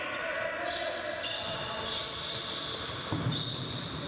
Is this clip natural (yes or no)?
yes